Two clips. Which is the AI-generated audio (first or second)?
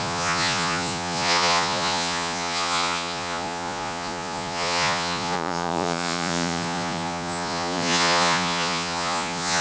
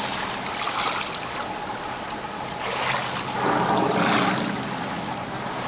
first